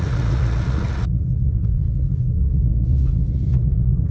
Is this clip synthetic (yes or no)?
yes